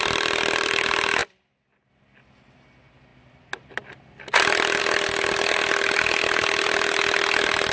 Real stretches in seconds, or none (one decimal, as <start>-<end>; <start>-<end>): 0.0-7.7